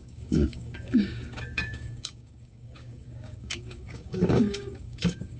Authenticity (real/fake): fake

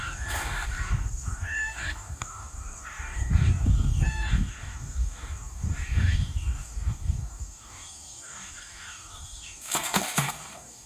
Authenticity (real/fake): fake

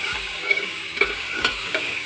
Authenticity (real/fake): fake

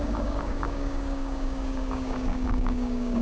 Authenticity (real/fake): fake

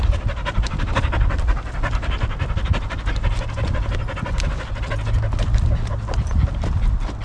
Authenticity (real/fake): real